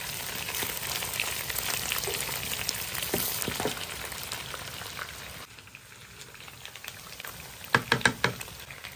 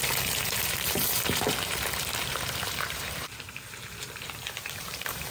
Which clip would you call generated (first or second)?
second